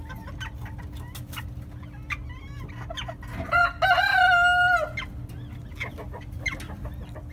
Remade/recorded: recorded